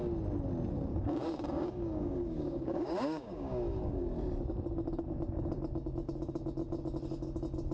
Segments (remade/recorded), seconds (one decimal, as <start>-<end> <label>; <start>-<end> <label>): 0.0-0.9 recorded; 0.9-4.0 remade; 4.0-7.7 recorded